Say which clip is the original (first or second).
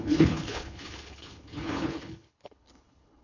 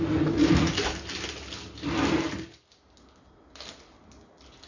second